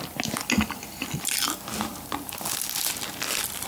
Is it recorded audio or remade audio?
recorded